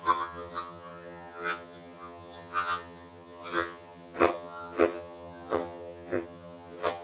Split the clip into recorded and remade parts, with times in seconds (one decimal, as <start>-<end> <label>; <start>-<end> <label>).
0.0-7.0 remade